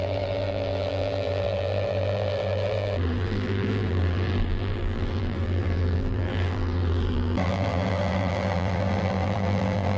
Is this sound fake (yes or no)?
yes